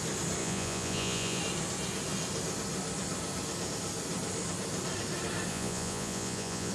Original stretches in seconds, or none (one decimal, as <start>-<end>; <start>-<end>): 0.0-0.4; 1.4-5.5